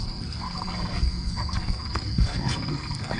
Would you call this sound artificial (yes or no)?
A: yes